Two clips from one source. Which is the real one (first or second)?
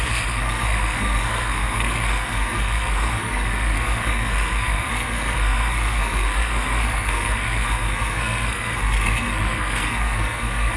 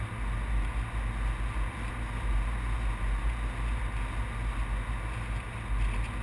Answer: second